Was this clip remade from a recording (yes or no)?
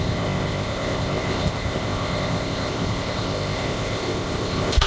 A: yes